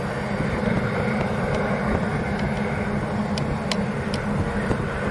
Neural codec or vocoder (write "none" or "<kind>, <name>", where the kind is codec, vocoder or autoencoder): none